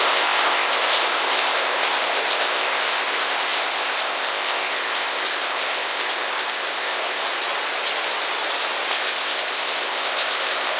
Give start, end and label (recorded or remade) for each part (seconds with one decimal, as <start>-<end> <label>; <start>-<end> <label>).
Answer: 0.0-7.2 remade; 7.2-8.9 recorded; 8.9-10.8 remade